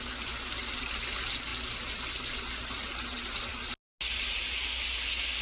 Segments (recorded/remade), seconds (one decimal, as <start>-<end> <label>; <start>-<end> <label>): 0.0-5.4 recorded